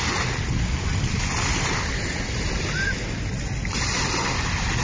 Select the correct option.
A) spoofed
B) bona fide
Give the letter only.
B